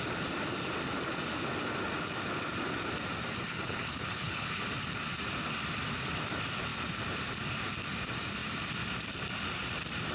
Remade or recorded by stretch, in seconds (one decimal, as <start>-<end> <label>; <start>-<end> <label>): 0.0-3.5 recorded; 3.5-4.6 remade; 4.6-10.1 recorded